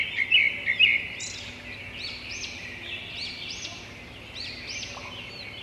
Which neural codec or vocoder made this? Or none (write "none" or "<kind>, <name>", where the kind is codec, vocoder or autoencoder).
none